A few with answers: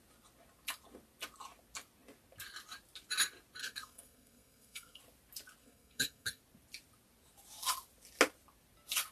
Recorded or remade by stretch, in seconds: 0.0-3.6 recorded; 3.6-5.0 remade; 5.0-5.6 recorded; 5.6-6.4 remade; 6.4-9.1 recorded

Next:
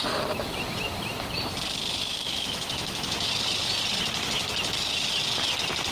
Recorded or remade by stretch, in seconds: 0.0-1.9 recorded; 1.9-3.3 remade; 3.3-5.9 recorded

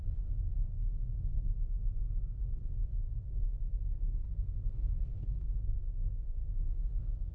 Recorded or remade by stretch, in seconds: 0.0-2.7 remade; 2.7-4.3 recorded; 4.3-7.3 remade

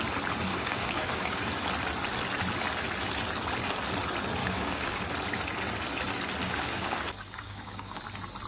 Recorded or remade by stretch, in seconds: 0.0-0.5 recorded; 0.5-1.5 remade; 1.5-4.4 recorded; 4.4-5.0 remade; 5.0-6.4 recorded; 6.4-8.0 remade; 8.0-8.5 recorded

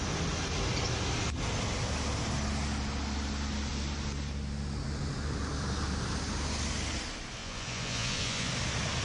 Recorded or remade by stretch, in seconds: 0.0-7.4 recorded; 7.4-8.5 remade; 8.5-9.0 recorded

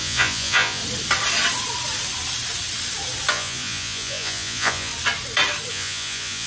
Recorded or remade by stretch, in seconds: 0.0-0.8 remade; 0.8-3.3 recorded; 3.3-4.9 remade; 4.9-5.7 recorded; 5.7-6.5 remade

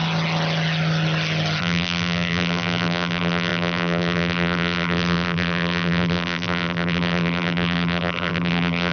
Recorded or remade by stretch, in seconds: 0.0-1.6 recorded; 1.6-8.9 remade

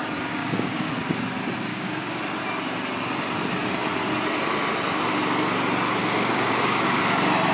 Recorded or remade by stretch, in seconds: 0.0-0.4 recorded; 0.4-0.9 remade; 0.9-1.7 recorded; 1.7-2.2 remade; 2.2-6.0 recorded; 6.0-7.0 remade; 7.0-7.5 recorded